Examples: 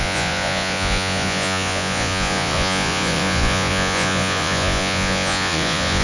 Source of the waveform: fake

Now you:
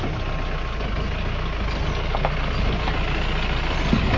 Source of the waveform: real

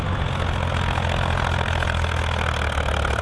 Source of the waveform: real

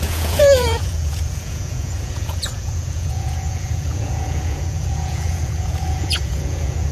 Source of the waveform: fake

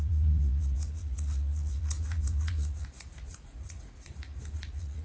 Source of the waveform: fake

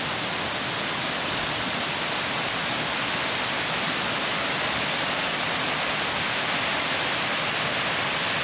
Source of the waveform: real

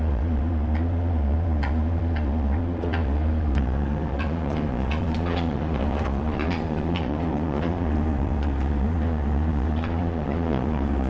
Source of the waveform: fake